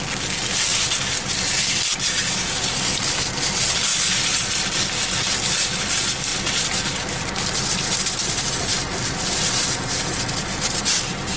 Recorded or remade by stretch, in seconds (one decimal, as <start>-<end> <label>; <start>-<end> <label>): 0.0-11.4 recorded